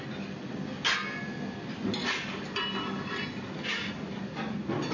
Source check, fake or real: real